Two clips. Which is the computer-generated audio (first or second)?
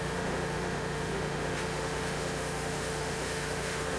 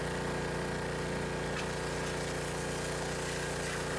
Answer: first